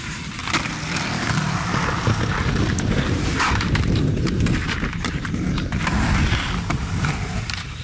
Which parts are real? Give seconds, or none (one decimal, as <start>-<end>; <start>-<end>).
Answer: 0.4-2.6

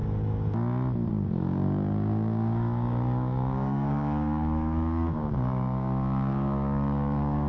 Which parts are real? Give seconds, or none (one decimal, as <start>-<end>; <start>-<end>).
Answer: 0.0-1.1

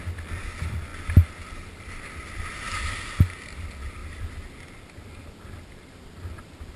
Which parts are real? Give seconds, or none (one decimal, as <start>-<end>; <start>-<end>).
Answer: 0.0-6.8

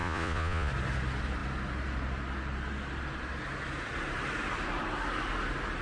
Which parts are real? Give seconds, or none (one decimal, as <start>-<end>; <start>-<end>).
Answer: 0.7-5.8

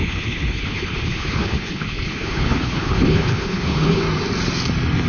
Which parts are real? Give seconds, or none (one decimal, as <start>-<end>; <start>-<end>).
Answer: 4.0-5.1